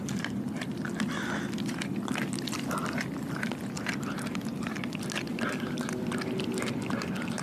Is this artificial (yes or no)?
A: no